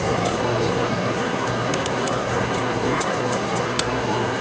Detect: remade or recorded remade